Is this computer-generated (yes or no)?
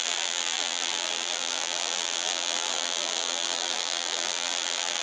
yes